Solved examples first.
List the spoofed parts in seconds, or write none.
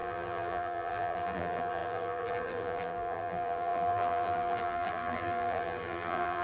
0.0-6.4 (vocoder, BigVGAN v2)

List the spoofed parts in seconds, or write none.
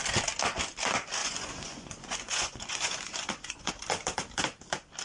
1.2-3.7 (vocoder, Vocos)